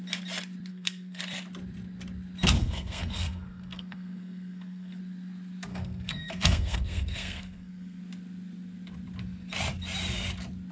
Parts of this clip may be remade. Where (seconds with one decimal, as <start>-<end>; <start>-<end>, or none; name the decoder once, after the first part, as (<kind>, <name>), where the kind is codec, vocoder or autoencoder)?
0.7-1.2 (codec, SNAC); 2.6-5.0; 5.7-8.0